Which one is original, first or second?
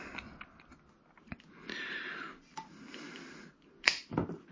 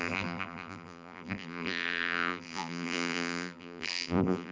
first